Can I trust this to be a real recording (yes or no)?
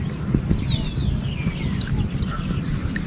yes